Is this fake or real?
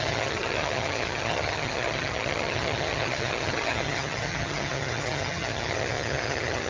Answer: fake